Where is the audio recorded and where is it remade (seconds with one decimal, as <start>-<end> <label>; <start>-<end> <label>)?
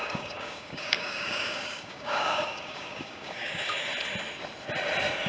0.0-3.9 remade; 3.9-5.3 recorded